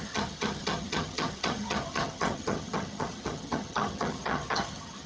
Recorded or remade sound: remade